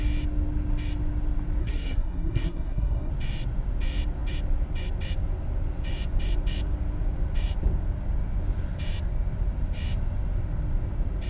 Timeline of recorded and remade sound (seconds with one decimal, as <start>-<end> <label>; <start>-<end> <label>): 0.0-1.6 recorded; 1.6-3.1 remade; 3.1-11.3 recorded